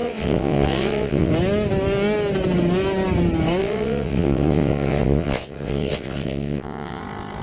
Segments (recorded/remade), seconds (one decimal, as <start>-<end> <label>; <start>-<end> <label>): 0.0-1.3 remade; 1.3-3.6 recorded; 3.6-7.0 remade; 7.0-7.4 recorded